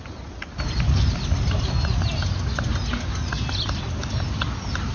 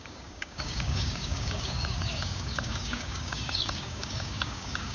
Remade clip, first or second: second